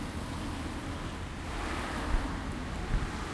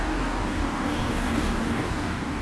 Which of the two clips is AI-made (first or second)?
second